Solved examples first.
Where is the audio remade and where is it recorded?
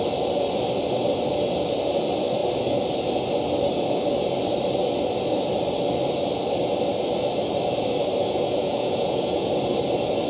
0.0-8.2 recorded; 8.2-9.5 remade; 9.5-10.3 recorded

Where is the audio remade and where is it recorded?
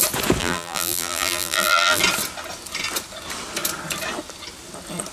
0.0-0.4 recorded; 0.4-2.0 remade; 2.0-5.1 recorded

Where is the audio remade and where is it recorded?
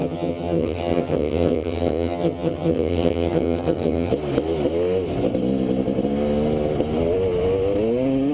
0.0-4.1 remade; 4.1-8.3 recorded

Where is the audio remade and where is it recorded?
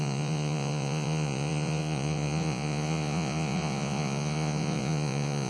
0.0-5.5 remade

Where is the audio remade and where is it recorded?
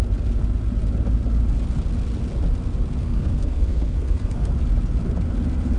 0.0-3.0 recorded; 3.0-4.5 remade; 4.5-5.8 recorded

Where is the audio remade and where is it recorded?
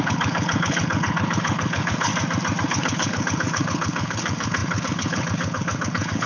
0.0-2.1 remade; 2.1-2.6 recorded; 2.6-6.3 remade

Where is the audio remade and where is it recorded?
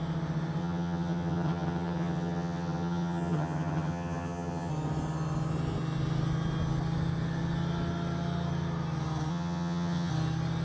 0.0-0.6 recorded; 0.6-4.7 remade; 4.7-9.3 recorded; 9.3-10.1 remade; 10.1-10.6 recorded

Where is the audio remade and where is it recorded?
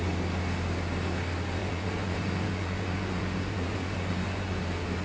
0.0-1.6 recorded; 1.6-4.6 remade; 4.6-5.0 recorded